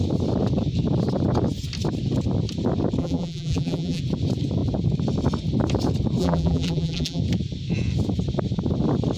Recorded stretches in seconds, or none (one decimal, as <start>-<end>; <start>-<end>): 0.0-3.0; 4.0-6.2; 7.2-9.2